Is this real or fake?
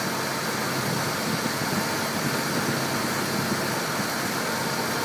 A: real